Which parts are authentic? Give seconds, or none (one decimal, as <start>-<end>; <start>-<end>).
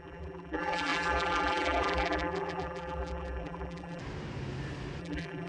4.0-5.0